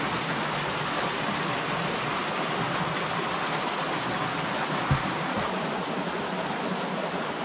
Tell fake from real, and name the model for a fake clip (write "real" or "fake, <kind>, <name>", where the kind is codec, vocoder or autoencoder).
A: real